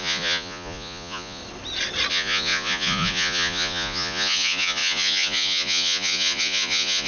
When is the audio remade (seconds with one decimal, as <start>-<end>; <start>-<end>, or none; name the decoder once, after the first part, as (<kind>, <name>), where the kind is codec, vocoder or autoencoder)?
0.0-1.4 (vocoder, Vocos); 2.1-7.1